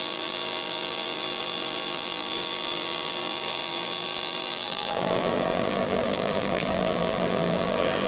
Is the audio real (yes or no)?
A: no